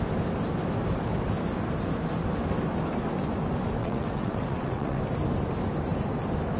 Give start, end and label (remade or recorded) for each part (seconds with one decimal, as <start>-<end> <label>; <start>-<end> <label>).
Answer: 0.0-3.8 recorded; 3.8-5.0 remade; 5.0-6.6 recorded